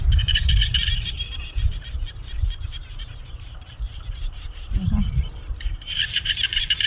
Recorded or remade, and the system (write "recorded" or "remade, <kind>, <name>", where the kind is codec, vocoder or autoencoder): remade, vocoder, BigVGAN v2